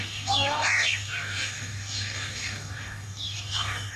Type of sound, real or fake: fake